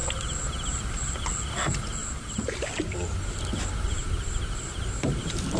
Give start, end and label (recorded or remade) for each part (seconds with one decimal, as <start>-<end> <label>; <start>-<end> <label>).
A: 0.0-1.2 remade; 1.2-2.0 recorded; 2.0-5.6 remade